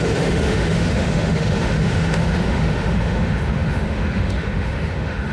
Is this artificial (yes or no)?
yes